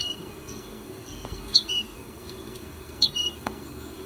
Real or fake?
fake